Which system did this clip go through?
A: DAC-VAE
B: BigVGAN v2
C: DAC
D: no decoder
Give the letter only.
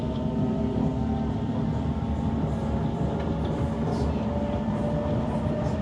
D